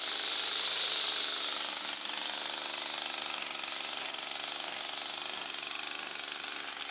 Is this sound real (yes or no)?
yes